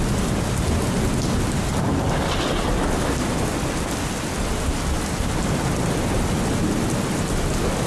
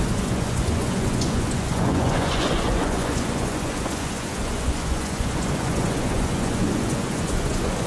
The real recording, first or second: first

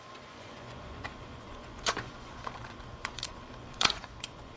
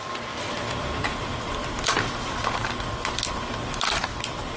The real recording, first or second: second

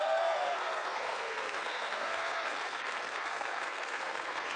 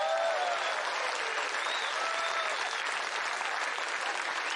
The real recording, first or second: second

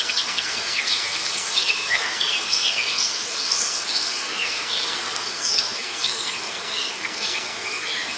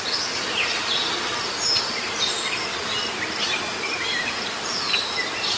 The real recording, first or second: second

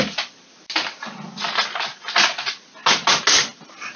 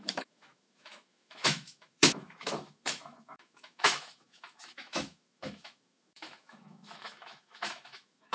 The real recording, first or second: first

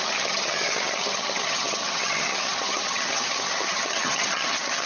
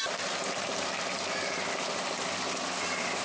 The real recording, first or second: second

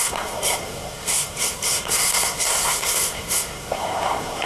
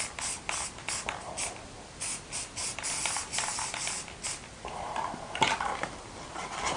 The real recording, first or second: second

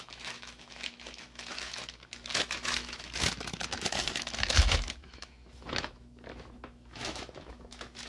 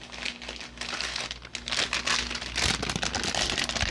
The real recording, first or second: second